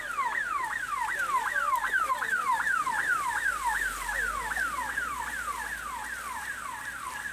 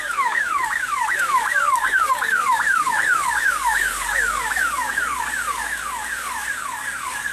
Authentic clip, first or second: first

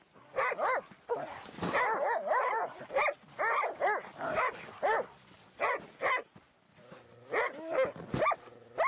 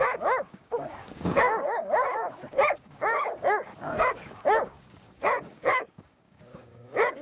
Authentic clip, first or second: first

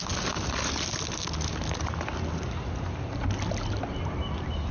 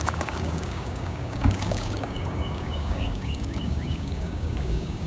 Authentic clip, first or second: first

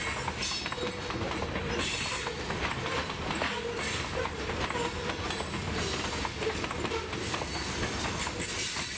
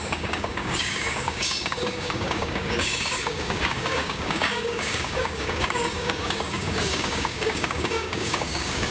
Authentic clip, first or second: first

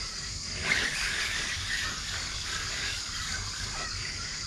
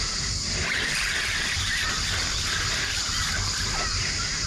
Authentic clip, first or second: second